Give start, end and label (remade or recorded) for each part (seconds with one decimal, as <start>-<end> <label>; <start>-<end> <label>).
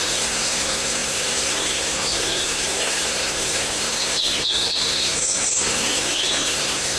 0.0-7.0 remade